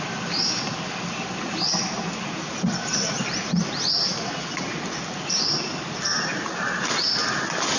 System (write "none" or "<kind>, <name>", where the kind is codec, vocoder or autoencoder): none